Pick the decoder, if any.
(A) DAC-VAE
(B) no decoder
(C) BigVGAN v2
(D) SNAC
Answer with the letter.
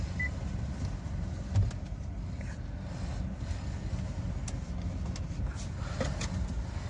B